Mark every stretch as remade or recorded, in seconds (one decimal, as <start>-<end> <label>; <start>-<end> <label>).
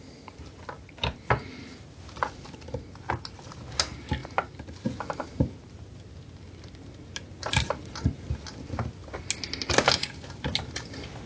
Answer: 0.0-11.3 recorded